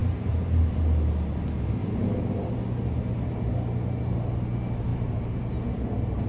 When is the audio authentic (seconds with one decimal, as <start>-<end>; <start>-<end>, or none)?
0.8-1.8; 2.6-4.9; 5.4-6.3